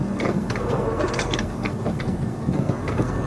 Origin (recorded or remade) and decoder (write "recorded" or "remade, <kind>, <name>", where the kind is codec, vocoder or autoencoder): remade, codec, SNAC